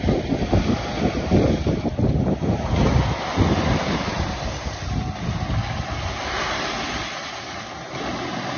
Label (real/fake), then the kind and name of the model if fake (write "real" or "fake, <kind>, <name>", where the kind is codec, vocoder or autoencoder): real